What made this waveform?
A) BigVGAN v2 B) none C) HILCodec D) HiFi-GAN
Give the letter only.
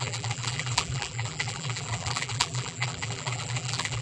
A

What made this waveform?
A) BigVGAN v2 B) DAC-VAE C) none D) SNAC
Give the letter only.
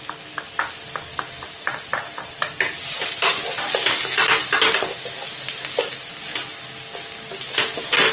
C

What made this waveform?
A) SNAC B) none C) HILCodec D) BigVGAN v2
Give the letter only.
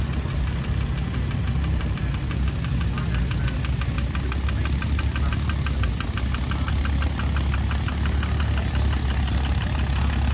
B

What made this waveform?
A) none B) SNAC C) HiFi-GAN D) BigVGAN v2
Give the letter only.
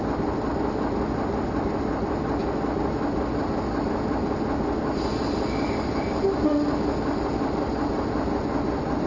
A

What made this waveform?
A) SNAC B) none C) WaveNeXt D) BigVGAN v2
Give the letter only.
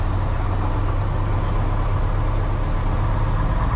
B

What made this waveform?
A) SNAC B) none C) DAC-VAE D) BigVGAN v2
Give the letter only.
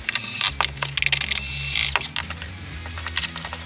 B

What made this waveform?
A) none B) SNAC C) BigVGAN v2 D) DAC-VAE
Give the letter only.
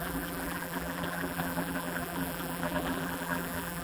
C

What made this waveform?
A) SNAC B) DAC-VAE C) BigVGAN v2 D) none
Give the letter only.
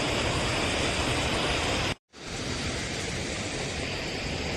C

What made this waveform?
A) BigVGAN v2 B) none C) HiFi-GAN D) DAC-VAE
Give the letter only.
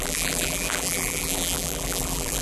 A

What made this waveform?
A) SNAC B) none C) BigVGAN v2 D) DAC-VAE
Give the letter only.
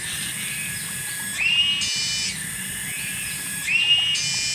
C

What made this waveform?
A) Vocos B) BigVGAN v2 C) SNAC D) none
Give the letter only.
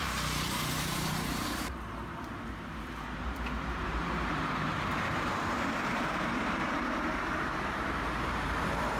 B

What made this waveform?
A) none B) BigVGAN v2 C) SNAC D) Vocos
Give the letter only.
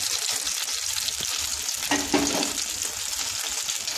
A